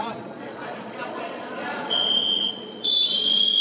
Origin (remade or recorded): remade